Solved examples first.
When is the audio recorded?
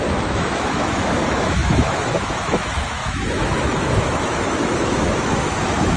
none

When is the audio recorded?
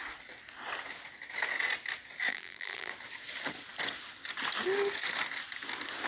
0.0-2.3; 2.9-6.1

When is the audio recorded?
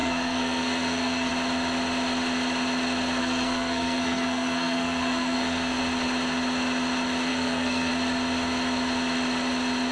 1.3-3.2; 5.8-7.3; 7.9-9.9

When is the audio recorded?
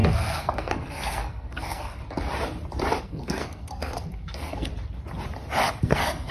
2.0-3.0; 4.7-5.8